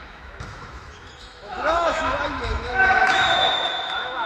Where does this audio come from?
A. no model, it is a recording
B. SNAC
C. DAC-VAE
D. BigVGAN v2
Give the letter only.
C